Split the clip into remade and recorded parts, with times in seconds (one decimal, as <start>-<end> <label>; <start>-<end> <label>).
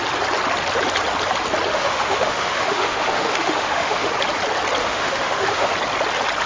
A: 0.0-1.7 recorded; 1.7-4.1 remade; 4.1-4.8 recorded; 4.8-5.7 remade; 5.7-6.5 recorded